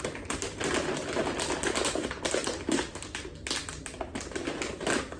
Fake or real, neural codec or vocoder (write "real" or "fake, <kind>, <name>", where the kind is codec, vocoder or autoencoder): real